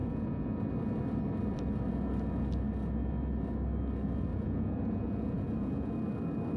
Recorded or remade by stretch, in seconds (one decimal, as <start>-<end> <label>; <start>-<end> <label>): 0.0-0.6 remade; 0.6-4.3 recorded; 4.3-5.9 remade; 5.9-6.6 recorded